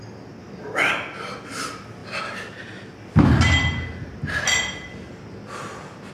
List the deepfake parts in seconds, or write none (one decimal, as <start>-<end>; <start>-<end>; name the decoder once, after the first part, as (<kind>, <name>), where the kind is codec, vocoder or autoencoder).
0.4-0.9 (autoencoder, DAC-VAE)